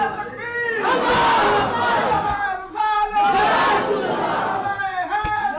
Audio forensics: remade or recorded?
recorded